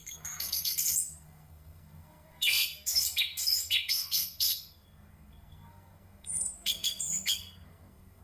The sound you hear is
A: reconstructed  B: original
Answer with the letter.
A